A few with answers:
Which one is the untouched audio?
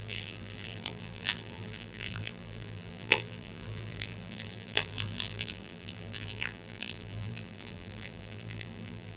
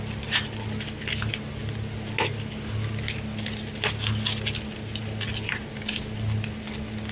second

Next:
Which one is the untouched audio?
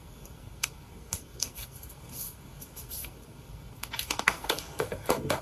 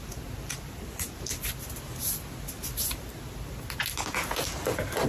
second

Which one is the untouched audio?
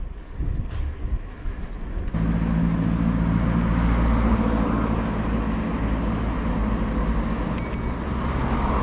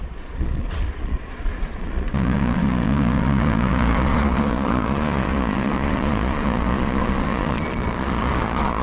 first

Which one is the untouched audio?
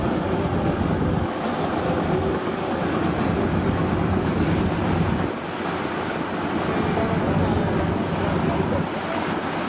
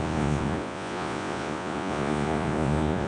first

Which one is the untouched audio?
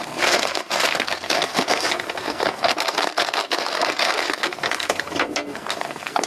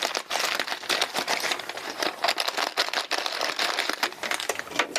second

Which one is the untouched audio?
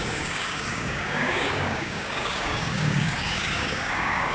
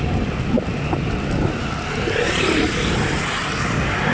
second